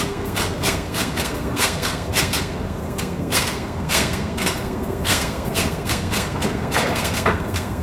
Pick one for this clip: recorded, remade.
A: remade